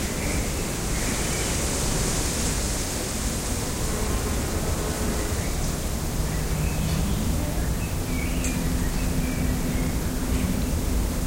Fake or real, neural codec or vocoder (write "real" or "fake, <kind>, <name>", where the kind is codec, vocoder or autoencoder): real